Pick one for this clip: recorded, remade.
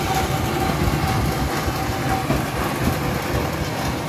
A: recorded